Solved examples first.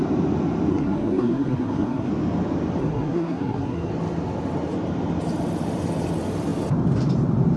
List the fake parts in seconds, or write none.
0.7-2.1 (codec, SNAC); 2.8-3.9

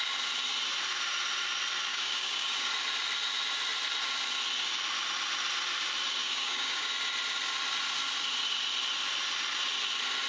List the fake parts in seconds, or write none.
1.9-2.7 (codec, DAC); 6.2-6.9

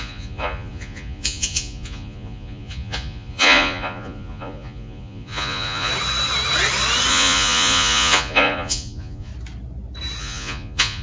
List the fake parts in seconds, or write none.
0.0-5.9 (vocoder, Vocos); 7.1-9.3; 10.2-11.0